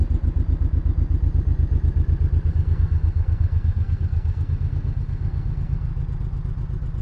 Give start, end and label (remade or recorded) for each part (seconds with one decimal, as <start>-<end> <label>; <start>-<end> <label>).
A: 0.0-2.5 recorded; 2.5-5.9 remade; 5.9-7.0 recorded